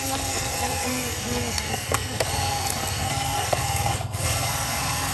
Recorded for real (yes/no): no